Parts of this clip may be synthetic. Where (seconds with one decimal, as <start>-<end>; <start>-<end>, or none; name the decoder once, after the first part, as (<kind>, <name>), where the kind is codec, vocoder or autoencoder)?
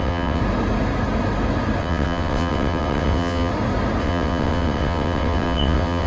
0.0-0.4 (vocoder, WaveNeXt); 1.8-3.5; 4.0-6.1